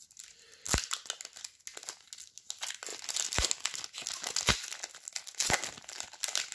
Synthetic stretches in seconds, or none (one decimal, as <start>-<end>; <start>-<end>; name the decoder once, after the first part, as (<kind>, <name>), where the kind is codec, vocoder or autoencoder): none